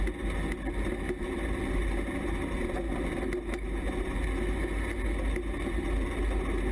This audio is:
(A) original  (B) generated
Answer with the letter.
A